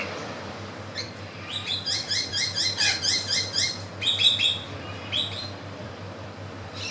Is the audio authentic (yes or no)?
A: no